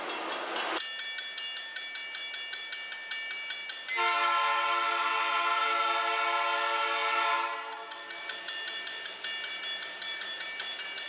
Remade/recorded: recorded